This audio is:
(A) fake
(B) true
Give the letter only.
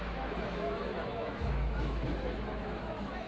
A